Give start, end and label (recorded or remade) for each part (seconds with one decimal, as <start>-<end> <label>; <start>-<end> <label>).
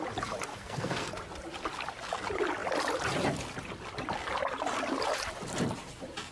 0.0-0.5 recorded; 0.5-1.1 remade; 1.1-6.3 recorded